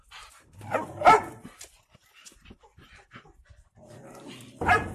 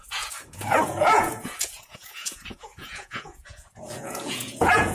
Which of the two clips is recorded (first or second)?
first